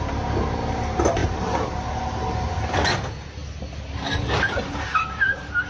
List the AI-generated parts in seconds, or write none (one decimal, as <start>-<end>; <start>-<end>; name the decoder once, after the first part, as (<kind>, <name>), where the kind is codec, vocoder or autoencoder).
none